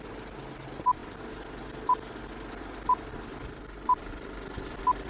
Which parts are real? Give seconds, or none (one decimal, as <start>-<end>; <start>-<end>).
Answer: 0.0-5.1